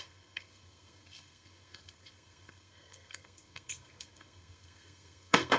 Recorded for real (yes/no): no